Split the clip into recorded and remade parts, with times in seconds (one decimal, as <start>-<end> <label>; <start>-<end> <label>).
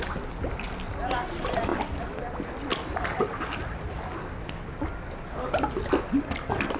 0.0-6.8 recorded